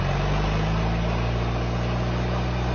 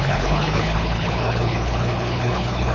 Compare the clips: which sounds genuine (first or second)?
first